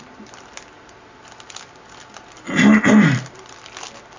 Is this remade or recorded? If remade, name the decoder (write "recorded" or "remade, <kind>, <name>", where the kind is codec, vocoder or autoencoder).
recorded